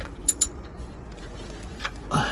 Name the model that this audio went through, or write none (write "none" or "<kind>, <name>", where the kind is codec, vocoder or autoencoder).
vocoder, Vocos